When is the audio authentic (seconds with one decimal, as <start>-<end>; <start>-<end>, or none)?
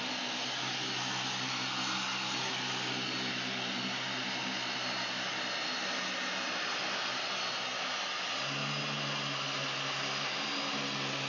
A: 0.0-11.3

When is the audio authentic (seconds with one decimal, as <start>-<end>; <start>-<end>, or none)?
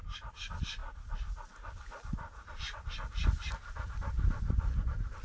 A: 0.0-5.2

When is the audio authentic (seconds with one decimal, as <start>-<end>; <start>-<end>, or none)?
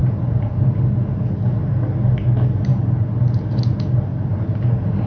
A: 0.8-2.7; 3.6-4.1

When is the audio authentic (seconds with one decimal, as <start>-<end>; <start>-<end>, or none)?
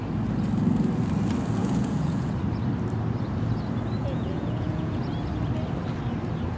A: 0.0-1.6; 2.3-4.0; 5.0-6.6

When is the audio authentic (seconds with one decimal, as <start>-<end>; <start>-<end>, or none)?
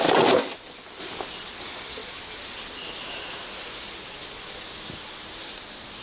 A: 0.0-6.0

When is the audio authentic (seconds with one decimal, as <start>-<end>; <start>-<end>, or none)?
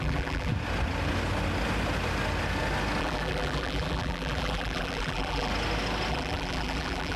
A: 0.5-3.0; 5.5-6.1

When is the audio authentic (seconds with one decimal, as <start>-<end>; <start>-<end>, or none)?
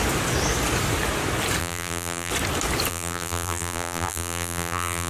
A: 0.0-1.6; 2.3-2.9